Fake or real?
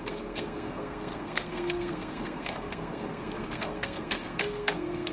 fake